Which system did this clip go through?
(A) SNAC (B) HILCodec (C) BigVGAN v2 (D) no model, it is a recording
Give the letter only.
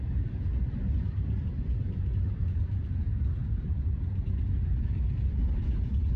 C